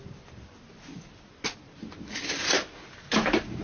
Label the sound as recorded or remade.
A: recorded